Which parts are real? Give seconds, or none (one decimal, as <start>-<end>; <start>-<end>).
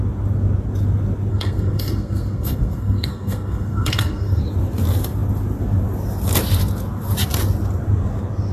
0.0-1.3; 4.4-8.5